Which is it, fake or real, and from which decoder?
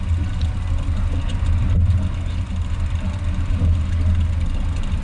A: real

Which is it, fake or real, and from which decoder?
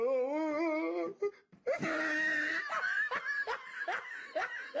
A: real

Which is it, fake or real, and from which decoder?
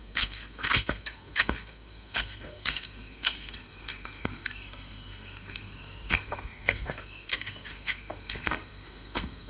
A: fake, codec, SNAC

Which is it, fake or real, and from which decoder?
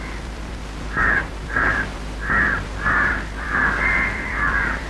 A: fake, vocoder, BigVGAN v2